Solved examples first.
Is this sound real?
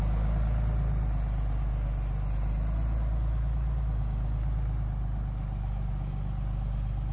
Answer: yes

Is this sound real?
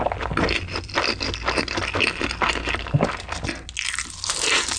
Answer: yes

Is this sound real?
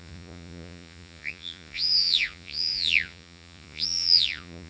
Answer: no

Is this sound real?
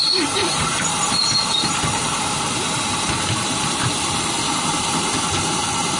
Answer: yes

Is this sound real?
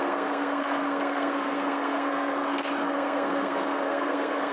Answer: no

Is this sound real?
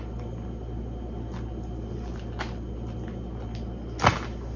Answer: yes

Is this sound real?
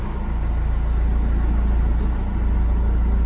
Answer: yes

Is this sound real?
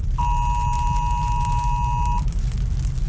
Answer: yes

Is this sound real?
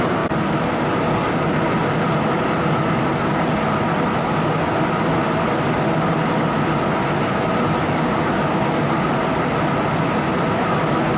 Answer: yes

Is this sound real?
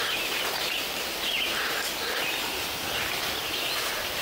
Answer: no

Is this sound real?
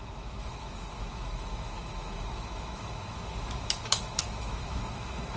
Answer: no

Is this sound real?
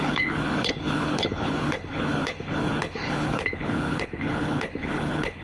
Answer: no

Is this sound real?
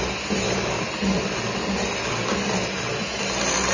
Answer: yes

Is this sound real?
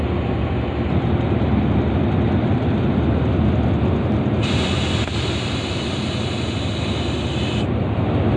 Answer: yes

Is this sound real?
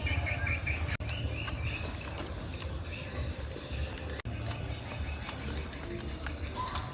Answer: yes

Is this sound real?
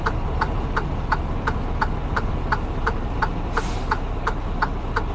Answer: yes